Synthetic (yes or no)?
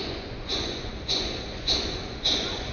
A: yes